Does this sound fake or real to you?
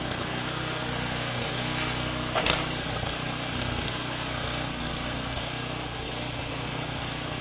fake